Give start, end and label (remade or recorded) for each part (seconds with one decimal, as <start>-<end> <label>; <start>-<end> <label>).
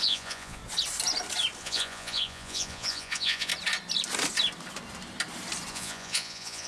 0.0-0.6 remade; 0.6-1.6 recorded; 1.6-3.5 remade; 3.5-5.7 recorded; 5.7-6.7 remade